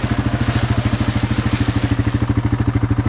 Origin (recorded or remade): recorded